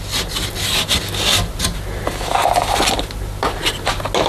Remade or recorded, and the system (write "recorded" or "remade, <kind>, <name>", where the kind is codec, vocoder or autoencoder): recorded